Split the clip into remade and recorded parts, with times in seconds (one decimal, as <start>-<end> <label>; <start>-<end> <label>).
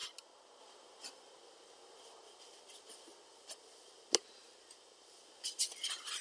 0.0-6.2 recorded